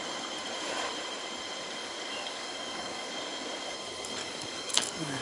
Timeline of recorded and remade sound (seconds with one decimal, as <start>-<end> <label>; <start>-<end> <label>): 0.0-1.8 recorded; 1.8-3.1 remade; 3.1-4.2 recorded; 4.2-5.2 remade